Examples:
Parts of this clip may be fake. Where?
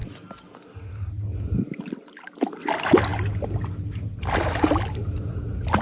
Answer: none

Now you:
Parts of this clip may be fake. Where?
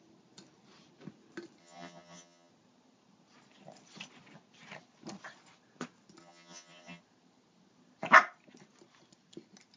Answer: 1.6-2.5 (vocoder, HiFi-GAN); 6.2-7.0